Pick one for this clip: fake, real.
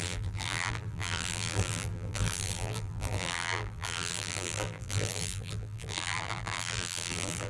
fake